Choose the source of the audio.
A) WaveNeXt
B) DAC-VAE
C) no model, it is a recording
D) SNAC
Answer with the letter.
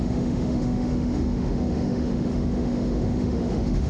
B